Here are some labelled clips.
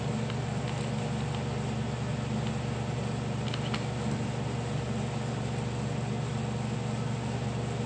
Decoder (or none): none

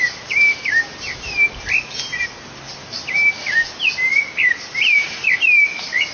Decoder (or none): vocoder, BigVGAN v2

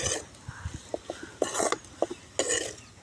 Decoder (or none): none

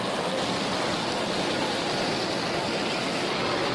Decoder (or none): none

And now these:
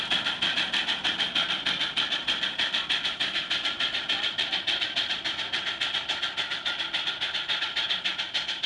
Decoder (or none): vocoder, BigVGAN v2